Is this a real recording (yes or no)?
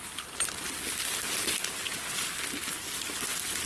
yes